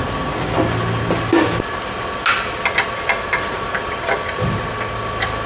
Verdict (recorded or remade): recorded